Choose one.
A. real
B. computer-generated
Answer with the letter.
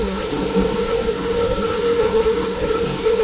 B